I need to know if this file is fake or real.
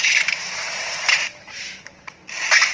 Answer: fake